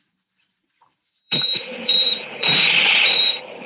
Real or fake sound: fake